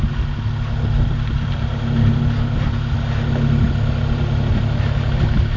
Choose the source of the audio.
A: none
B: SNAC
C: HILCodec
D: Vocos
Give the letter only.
A